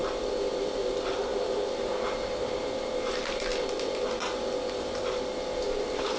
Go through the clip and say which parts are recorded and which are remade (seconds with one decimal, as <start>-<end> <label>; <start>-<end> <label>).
0.0-0.6 recorded; 0.6-3.5 remade; 3.5-4.8 recorded; 4.8-6.2 remade